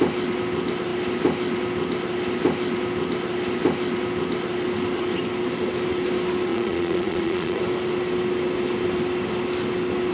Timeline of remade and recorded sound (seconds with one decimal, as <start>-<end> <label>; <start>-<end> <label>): 0.0-6.5 recorded; 6.5-7.6 remade; 7.6-10.1 recorded